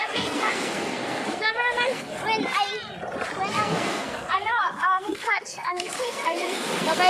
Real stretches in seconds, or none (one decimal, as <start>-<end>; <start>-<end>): 2.2-3.5

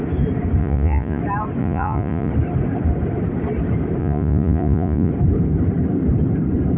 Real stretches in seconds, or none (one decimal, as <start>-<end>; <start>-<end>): 0.0-0.6; 1.2-1.6; 2.3-4.0; 5.1-6.8